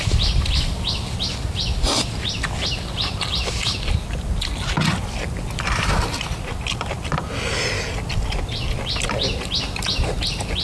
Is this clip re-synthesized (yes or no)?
no